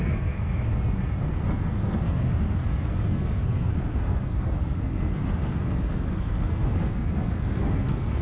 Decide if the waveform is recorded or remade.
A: remade